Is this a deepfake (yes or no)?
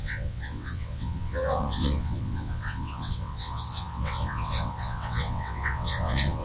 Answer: yes